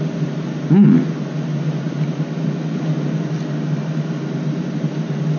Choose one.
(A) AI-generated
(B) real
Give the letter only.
B